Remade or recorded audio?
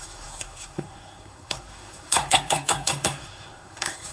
remade